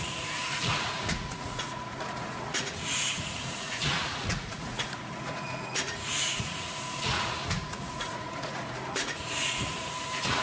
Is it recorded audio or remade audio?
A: remade